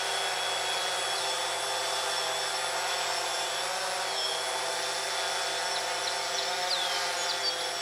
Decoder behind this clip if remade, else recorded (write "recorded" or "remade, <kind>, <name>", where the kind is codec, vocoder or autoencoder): recorded